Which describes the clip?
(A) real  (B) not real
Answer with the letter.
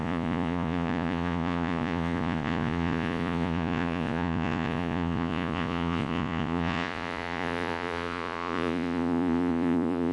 B